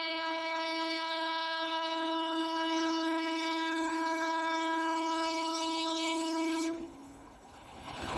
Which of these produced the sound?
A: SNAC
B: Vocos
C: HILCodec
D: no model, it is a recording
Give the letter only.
C